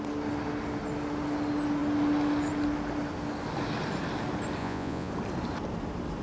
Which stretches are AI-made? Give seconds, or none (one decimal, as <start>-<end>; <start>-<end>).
4.6-5.1